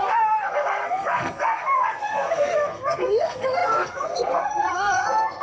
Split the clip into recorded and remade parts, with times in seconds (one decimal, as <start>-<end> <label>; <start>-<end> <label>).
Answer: 0.0-5.4 remade